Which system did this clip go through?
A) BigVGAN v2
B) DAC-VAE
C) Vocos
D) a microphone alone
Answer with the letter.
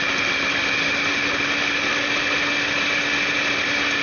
D